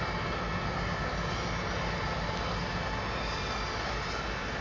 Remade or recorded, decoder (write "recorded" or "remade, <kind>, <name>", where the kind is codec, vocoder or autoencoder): recorded